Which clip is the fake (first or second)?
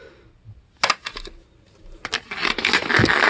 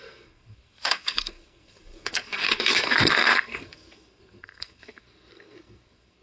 second